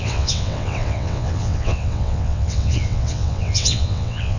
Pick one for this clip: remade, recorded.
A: remade